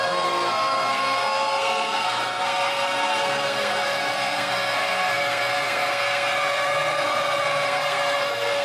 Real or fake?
fake